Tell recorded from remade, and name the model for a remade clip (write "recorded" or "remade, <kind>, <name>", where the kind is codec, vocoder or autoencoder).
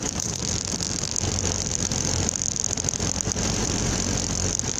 recorded